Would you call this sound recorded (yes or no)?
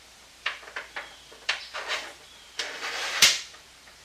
no